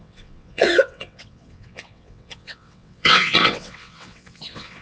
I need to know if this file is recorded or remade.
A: remade